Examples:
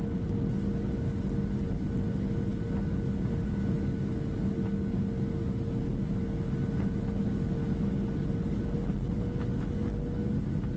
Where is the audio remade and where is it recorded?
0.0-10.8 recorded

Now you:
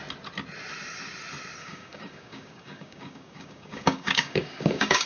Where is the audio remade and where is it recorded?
0.0-1.6 recorded; 1.6-5.1 remade

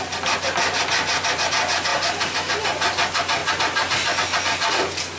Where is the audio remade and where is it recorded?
0.0-5.2 recorded

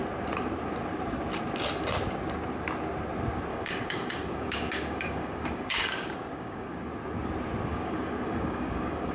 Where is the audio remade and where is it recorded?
0.0-3.5 recorded; 3.5-6.9 remade; 6.9-7.7 recorded; 7.7-9.1 remade

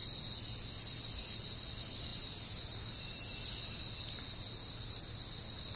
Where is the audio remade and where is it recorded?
0.0-5.8 recorded

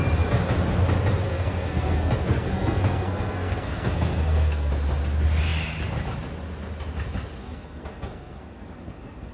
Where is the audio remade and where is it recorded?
0.0-1.3 recorded; 1.3-4.7 remade; 4.7-7.4 recorded; 7.4-9.3 remade

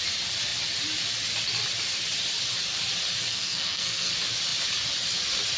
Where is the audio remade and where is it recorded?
0.0-3.3 recorded; 3.3-4.1 remade; 4.1-5.6 recorded

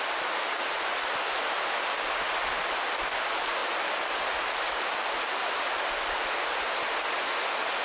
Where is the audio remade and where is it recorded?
0.0-7.8 recorded